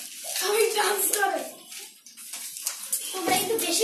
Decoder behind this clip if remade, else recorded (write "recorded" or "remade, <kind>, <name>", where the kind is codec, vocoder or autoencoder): recorded